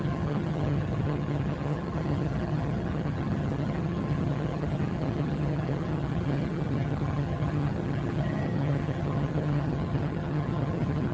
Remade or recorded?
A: remade